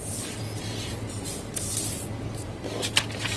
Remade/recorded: recorded